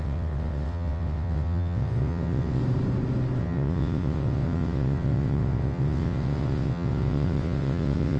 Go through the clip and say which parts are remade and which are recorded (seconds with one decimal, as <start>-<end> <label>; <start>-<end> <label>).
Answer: 0.0-2.6 remade; 2.6-3.4 recorded; 3.4-8.2 remade